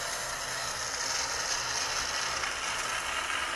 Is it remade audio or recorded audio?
recorded